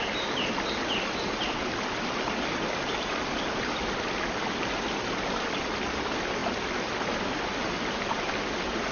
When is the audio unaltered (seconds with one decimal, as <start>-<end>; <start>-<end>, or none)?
0.0-8.9